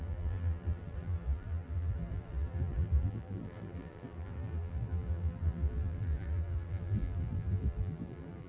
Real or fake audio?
fake